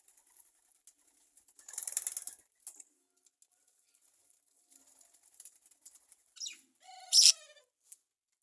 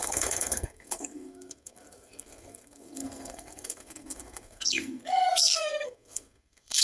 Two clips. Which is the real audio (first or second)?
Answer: first